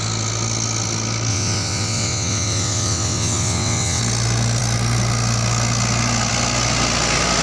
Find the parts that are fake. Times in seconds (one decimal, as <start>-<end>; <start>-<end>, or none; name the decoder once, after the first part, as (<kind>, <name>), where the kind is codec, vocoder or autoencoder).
1.3-4.0 (vocoder, WaveNeXt)